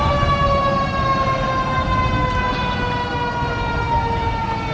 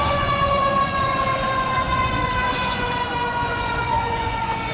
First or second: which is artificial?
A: second